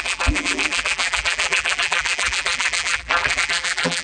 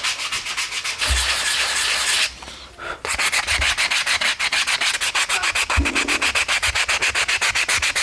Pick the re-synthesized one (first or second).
first